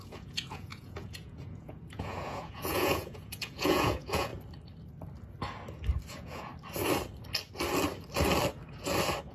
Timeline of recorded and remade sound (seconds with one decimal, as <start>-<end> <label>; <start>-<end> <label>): 0.0-4.3 remade; 4.3-6.1 recorded; 6.1-6.5 remade; 6.5-9.3 recorded